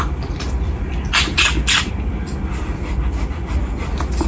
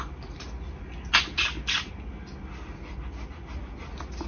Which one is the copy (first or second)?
first